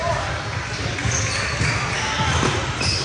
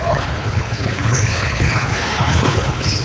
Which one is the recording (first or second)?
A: first